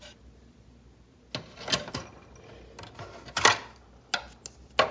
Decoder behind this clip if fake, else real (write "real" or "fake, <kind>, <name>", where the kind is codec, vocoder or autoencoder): real